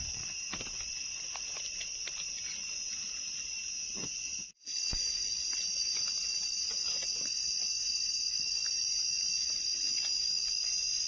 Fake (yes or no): yes